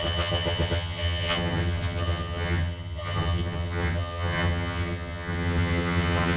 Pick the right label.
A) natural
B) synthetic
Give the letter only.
B